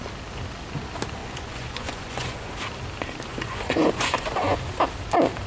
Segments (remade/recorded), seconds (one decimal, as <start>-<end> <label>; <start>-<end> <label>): 0.0-1.2 recorded; 1.2-2.5 remade; 2.5-3.3 recorded; 3.3-4.6 remade; 4.6-5.5 recorded